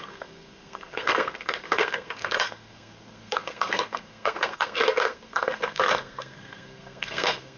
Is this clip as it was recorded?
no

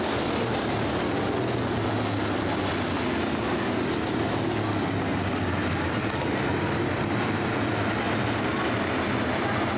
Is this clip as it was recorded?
yes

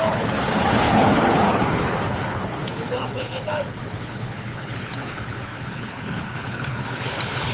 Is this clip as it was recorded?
no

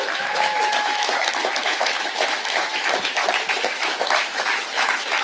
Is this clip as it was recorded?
no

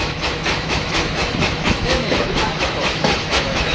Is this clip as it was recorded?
no